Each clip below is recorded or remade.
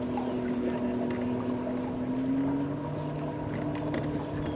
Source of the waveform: recorded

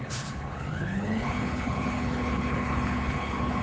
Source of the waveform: remade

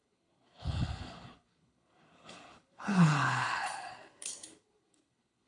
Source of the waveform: remade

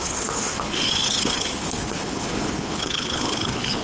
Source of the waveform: remade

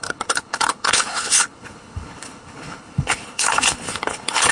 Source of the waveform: remade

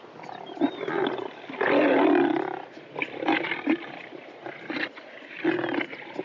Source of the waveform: recorded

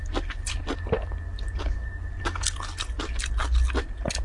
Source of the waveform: recorded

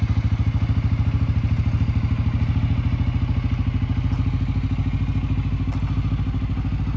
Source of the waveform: recorded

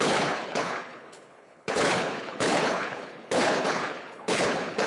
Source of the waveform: remade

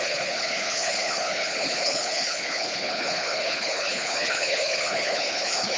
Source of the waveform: remade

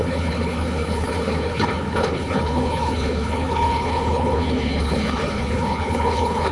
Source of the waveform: remade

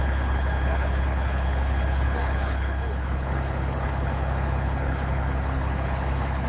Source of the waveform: remade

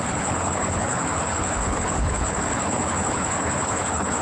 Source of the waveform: remade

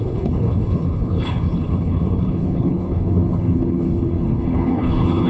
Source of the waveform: remade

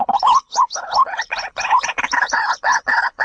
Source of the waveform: remade